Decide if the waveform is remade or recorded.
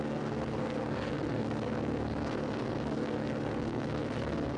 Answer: remade